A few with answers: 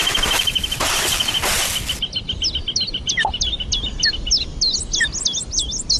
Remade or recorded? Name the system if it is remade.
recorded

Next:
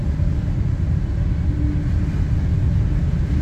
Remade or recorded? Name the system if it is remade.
recorded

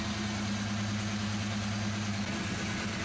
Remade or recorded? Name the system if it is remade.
recorded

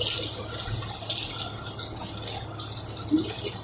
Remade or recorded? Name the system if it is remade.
recorded